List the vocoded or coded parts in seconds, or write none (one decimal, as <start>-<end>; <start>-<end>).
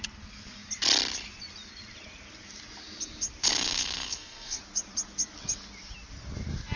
3.4-4.6